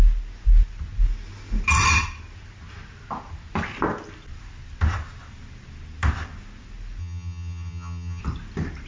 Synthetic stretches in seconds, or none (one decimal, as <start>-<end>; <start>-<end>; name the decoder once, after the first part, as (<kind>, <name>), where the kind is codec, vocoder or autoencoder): 7.0-8.2 (vocoder, HiFi-GAN)